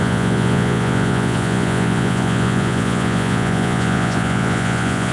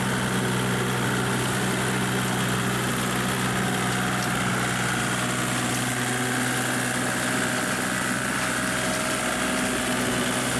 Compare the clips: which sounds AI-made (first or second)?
first